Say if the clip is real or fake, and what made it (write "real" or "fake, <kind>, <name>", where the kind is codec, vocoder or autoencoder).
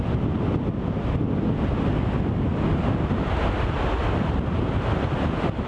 real